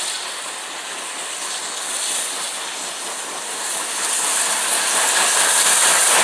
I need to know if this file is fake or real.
fake